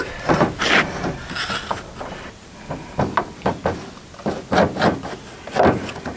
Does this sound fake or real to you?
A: real